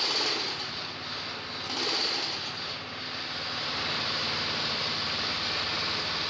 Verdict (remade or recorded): recorded